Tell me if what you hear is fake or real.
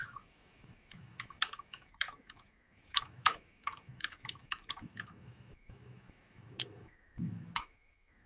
fake